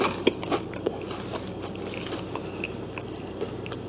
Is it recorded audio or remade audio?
recorded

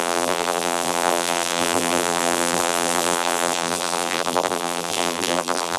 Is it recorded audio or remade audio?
remade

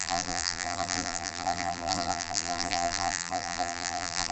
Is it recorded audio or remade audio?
remade